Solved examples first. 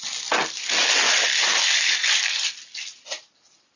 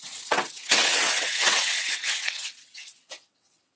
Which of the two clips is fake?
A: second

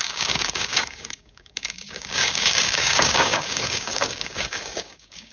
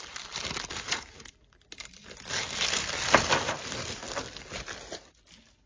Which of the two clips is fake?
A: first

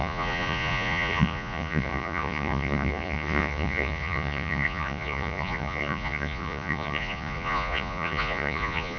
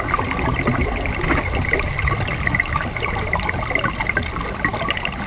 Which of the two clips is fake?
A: first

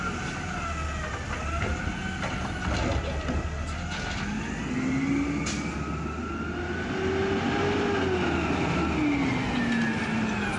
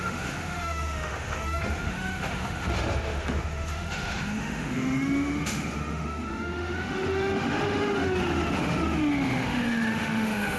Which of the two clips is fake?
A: second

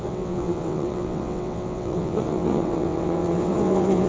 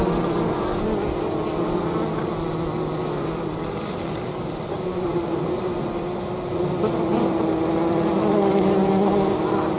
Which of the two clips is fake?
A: first